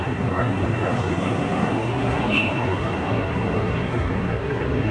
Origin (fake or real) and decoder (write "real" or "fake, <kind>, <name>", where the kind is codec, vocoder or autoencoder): fake, codec, SNAC